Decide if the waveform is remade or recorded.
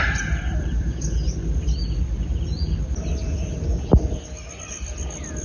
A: recorded